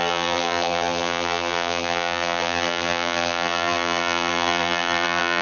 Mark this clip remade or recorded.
remade